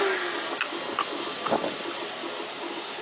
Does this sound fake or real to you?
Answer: real